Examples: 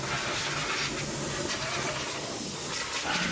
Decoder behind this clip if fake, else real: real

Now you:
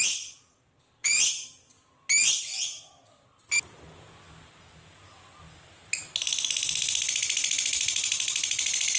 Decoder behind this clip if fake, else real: real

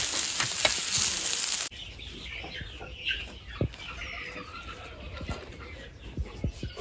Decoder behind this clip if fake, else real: real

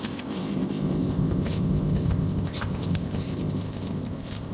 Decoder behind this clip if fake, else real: fake, codec, ZipCodec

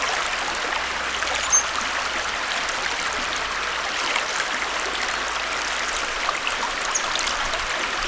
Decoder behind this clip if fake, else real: real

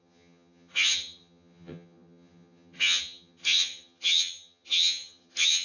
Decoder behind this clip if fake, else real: fake, vocoder, HiFi-GAN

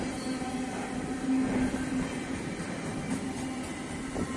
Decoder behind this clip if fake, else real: real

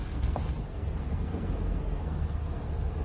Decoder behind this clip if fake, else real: fake, codec, SNAC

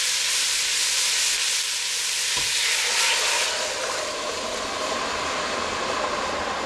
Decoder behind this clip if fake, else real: real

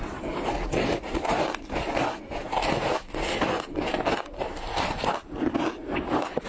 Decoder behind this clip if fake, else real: real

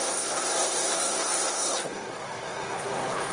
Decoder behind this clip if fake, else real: fake, codec, SNAC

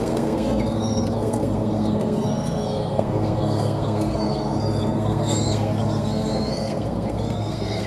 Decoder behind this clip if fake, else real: fake, codec, SNAC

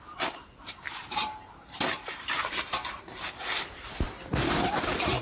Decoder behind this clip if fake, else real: fake, vocoder, BigVGAN v2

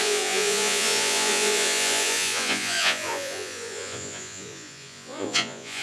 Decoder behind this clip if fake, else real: fake, vocoder, Vocos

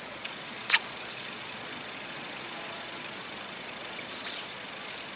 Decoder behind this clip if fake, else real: fake, vocoder, Vocos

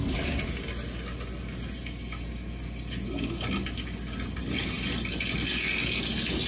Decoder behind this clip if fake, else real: real